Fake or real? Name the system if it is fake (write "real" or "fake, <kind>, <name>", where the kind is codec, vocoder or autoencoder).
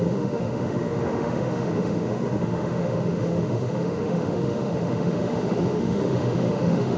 fake, autoencoder, DAC-VAE